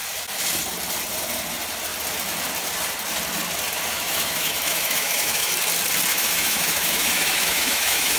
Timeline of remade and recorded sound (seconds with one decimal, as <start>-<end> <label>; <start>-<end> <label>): 0.0-3.9 recorded; 3.9-5.5 remade; 5.5-6.1 recorded; 6.1-8.2 remade